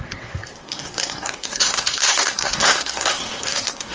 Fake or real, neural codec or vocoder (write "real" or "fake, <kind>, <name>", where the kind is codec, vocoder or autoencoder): fake, codec, SNAC